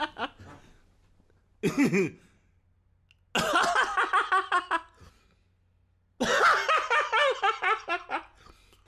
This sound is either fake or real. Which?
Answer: real